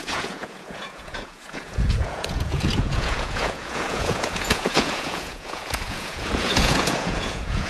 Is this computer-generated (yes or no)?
yes